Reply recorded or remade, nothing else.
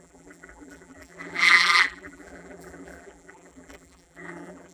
remade